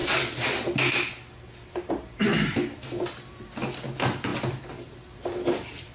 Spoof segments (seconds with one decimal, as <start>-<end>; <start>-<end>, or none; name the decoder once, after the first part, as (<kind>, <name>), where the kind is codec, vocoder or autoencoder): none